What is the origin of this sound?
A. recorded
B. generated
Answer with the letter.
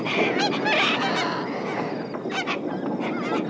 A